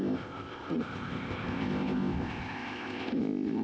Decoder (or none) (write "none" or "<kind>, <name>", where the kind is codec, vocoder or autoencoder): codec, ZipCodec